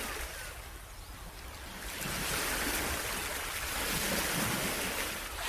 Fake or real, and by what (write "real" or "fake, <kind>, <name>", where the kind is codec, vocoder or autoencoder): fake, vocoder, BigVGAN v2